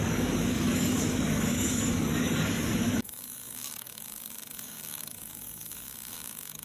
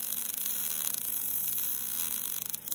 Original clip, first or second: second